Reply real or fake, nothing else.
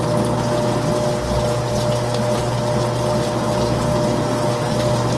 real